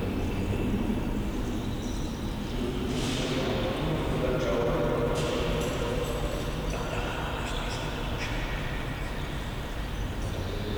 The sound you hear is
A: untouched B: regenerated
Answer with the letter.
A